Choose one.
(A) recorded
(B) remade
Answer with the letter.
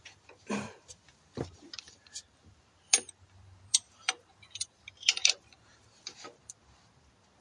B